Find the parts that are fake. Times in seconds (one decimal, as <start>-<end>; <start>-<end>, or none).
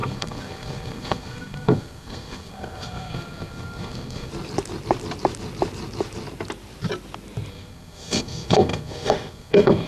0.0-4.3; 7.5-9.9